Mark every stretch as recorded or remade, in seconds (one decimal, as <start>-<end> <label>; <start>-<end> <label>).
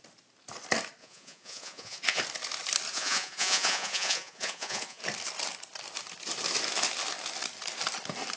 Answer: 0.0-1.0 recorded; 1.0-2.2 remade; 2.2-2.9 recorded; 2.9-5.0 remade; 5.0-8.4 recorded